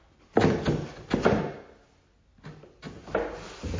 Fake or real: real